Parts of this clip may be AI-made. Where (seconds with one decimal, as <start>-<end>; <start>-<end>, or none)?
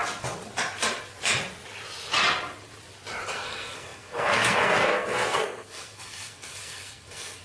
3.3-7.4